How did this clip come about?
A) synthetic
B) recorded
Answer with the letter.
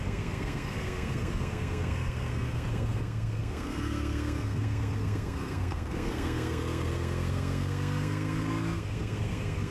A